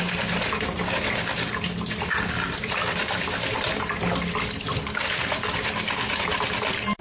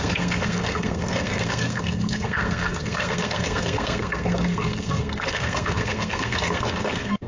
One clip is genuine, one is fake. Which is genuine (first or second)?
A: first